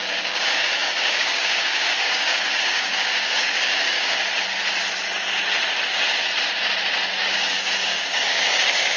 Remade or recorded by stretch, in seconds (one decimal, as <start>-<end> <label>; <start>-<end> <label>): 0.0-4.2 remade; 4.2-7.2 recorded; 7.2-9.0 remade